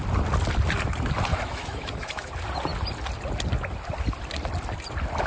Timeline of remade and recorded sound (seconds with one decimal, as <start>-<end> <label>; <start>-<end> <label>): 0.0-1.3 recorded; 1.3-2.3 remade; 2.3-5.3 recorded